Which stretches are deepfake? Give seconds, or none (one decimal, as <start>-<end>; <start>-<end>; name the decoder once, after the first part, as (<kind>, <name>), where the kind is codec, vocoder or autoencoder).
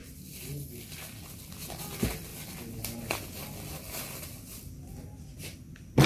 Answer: none